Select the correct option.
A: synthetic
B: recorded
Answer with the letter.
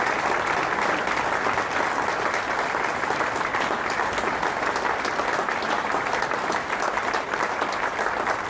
B